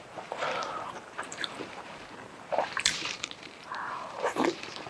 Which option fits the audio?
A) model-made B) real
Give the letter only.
A